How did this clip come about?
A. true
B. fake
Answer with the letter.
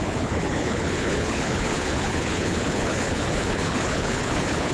B